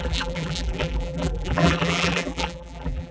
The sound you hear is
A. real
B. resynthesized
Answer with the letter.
B